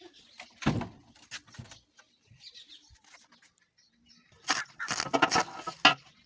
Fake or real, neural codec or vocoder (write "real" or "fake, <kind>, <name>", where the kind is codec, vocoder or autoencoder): real